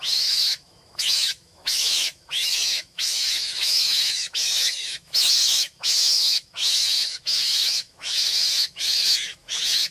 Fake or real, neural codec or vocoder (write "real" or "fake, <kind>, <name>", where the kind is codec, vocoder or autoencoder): fake, autoencoder, DAC-VAE